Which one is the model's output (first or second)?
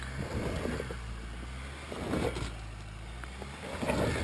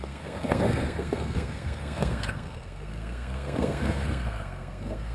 second